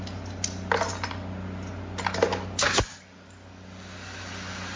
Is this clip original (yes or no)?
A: yes